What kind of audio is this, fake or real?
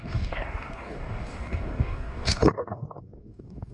fake